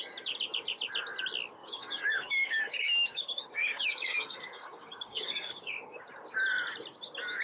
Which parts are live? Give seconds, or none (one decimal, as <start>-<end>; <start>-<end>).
0.0-1.6; 6.0-7.4